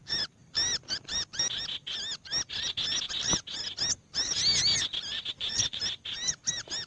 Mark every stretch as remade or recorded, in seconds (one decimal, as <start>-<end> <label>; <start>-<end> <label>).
0.0-5.3 recorded; 5.3-5.8 remade; 5.8-6.9 recorded